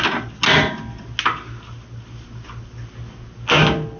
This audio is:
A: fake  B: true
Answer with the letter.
B